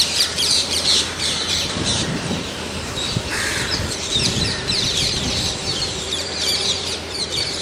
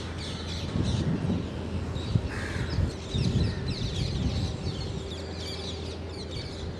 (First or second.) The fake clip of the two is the first